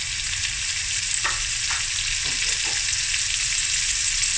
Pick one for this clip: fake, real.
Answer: real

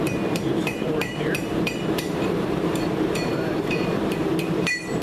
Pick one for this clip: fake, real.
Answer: fake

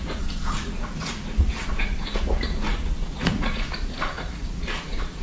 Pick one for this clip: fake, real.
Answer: fake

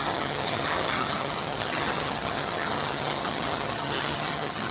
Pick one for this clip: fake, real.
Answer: fake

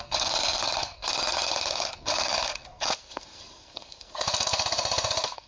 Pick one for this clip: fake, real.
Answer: fake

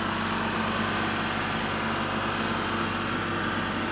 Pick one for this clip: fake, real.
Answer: real